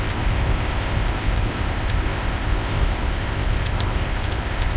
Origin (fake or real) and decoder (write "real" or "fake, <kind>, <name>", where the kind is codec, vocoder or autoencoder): fake, codec, ZipCodec